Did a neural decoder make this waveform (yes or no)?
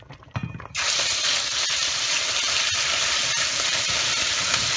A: yes